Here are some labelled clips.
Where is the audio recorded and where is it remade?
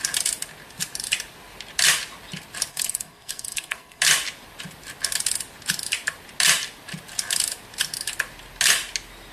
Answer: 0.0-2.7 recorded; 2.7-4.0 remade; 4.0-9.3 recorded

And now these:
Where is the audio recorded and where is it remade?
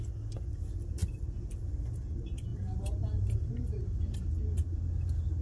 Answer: 0.0-2.5 recorded; 2.5-4.3 remade; 4.3-5.4 recorded